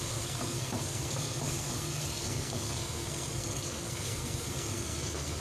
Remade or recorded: remade